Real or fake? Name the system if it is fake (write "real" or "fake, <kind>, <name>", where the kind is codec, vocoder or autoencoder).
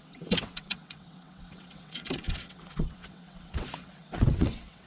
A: fake, vocoder, WaveNeXt